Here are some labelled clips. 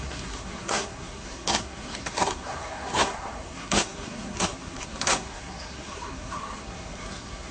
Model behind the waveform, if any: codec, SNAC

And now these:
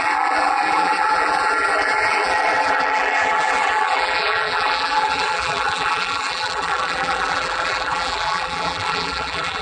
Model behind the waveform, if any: vocoder, BigVGAN v2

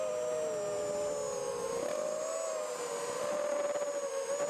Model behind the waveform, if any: none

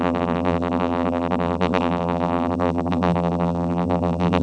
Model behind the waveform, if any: vocoder, BigVGAN v2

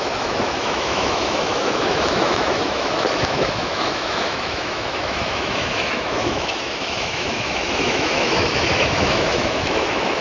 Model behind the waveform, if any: autoencoder, DAC-VAE